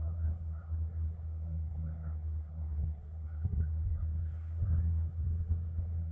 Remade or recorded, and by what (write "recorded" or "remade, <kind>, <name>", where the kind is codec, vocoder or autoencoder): remade, codec, SNAC